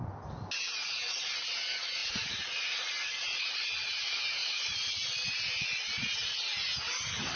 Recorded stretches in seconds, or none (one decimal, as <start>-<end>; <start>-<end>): 0.0-2.0; 3.9-4.4; 6.1-7.4